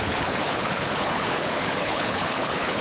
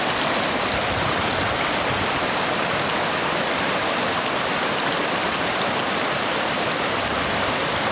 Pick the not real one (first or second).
first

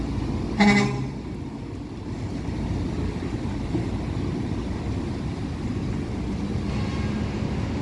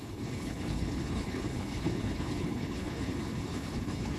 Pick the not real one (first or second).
second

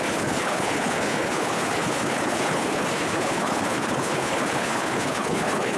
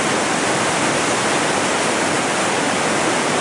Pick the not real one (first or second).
first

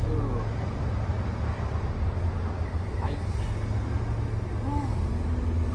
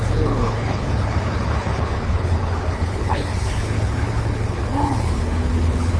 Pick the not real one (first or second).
second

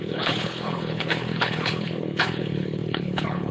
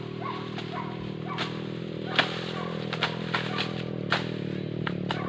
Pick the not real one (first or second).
first